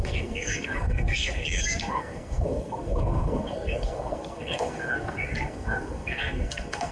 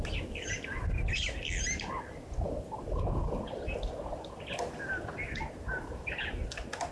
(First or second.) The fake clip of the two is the first